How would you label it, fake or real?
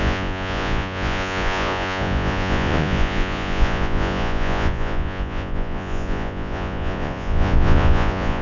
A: fake